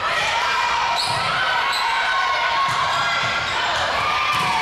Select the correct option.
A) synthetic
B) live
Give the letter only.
A